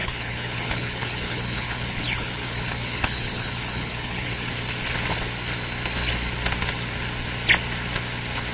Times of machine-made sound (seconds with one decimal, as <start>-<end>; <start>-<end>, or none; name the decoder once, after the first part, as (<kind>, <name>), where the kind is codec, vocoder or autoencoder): 0.0-4.5 (codec, HILCodec)